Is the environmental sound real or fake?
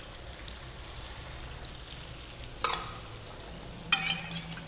real